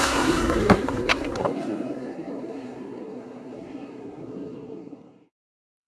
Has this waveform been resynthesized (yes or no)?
yes